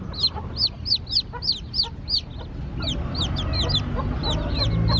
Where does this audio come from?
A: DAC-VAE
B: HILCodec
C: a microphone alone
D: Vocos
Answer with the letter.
C